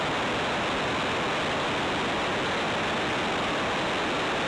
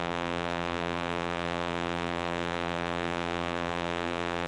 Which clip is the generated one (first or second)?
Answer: second